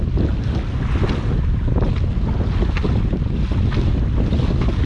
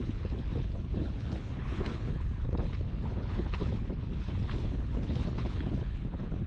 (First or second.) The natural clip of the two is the first